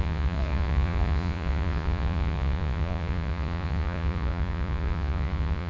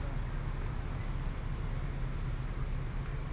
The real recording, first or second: second